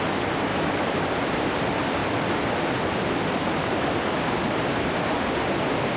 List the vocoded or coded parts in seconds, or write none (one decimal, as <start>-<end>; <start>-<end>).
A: none

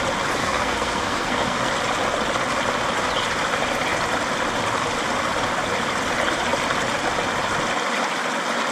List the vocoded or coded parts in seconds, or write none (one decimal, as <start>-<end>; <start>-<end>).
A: 0.4-1.7

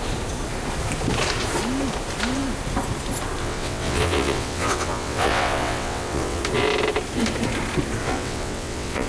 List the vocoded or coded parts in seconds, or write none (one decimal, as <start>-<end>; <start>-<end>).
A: 3.4-6.4; 8.0-9.1